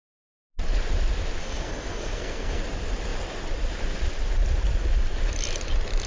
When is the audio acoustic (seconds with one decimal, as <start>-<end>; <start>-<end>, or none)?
0.0-1.4; 2.6-6.1